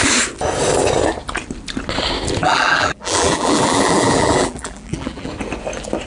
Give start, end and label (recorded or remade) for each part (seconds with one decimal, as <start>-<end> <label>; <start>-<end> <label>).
0.0-2.4 recorded; 2.4-5.3 remade; 5.3-6.1 recorded